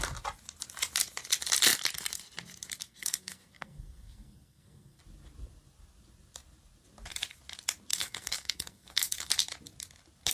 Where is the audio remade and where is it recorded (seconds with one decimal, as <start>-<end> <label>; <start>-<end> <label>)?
0.0-2.8 recorded; 2.8-5.0 remade; 5.0-7.9 recorded; 7.9-9.3 remade; 9.3-10.3 recorded